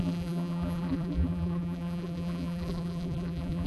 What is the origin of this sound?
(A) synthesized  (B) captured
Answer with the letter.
A